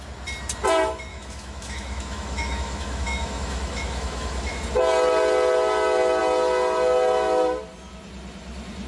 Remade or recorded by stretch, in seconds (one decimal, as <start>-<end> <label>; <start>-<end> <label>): 0.0-1.1 recorded; 1.1-4.6 remade; 4.6-8.9 recorded